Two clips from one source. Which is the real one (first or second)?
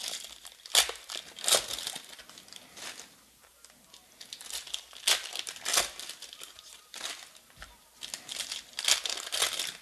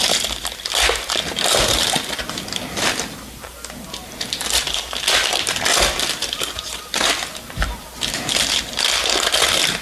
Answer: first